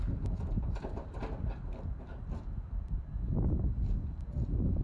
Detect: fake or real fake